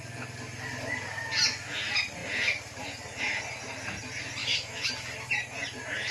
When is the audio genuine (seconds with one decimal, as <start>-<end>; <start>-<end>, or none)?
0.0-4.4; 4.9-6.1